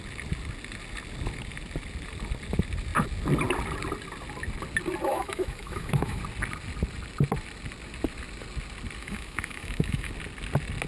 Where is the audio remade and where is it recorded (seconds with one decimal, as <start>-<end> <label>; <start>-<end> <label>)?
0.0-5.1 recorded; 5.1-6.2 remade; 6.2-9.0 recorded; 9.0-10.1 remade; 10.1-10.9 recorded